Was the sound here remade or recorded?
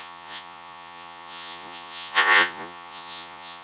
remade